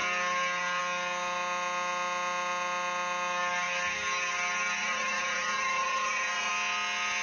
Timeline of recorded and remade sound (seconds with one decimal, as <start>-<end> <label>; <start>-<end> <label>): 0.0-4.8 recorded; 4.8-6.5 remade; 6.5-7.2 recorded

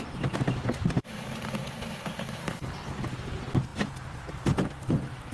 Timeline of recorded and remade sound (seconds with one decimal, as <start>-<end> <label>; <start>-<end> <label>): 0.0-2.4 recorded; 2.4-2.9 remade; 2.9-5.3 recorded

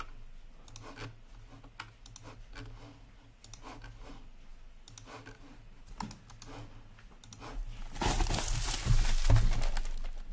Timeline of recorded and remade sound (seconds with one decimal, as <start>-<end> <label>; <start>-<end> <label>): 0.0-10.3 recorded

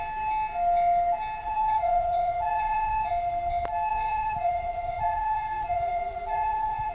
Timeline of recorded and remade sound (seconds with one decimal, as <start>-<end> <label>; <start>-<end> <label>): 0.0-1.4 recorded; 1.4-3.1 remade; 3.1-3.9 recorded; 3.9-6.9 remade

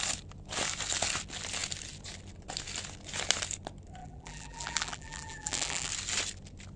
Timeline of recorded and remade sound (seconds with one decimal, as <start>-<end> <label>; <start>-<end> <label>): 0.0-4.0 recorded; 4.0-5.9 remade; 5.9-6.8 recorded

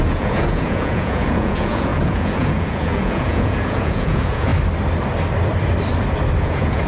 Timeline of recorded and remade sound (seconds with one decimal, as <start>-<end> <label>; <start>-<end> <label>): 0.0-4.5 remade; 4.5-6.4 recorded; 6.4-6.9 remade